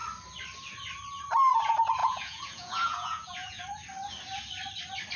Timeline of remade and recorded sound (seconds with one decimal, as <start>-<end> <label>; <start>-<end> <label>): 0.0-2.0 recorded; 2.0-3.6 remade; 3.6-5.2 recorded